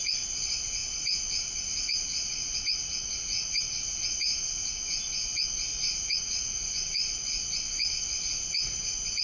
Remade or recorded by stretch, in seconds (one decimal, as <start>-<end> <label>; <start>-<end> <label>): 0.0-9.2 remade